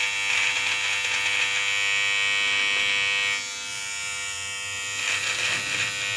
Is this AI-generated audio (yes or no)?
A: no